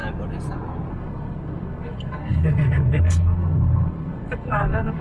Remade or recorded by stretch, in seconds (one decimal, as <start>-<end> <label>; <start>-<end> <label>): 0.0-0.9 recorded; 0.9-5.0 remade